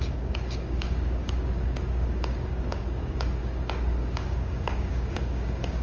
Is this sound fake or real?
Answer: fake